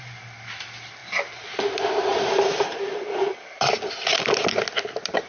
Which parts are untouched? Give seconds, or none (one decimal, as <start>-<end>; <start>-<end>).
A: 0.0-2.1; 3.7-5.3